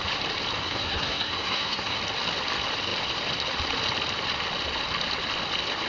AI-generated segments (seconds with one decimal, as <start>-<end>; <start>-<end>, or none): 0.6-2.0